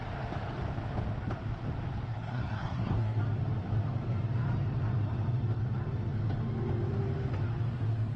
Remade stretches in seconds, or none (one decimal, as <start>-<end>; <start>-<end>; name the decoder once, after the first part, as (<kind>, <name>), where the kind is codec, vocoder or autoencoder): 2.1-3.2 (codec, SNAC)